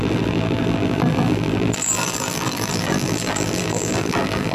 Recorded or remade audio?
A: remade